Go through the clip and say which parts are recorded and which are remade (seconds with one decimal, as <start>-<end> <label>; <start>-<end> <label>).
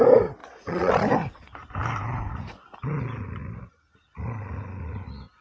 0.0-0.4 recorded; 0.4-0.9 remade; 0.9-5.4 recorded